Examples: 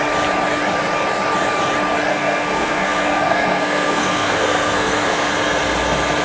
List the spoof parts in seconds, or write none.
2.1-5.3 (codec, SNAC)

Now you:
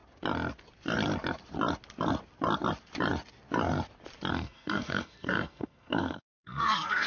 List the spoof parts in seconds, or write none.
4.3-7.1 (codec, SNAC)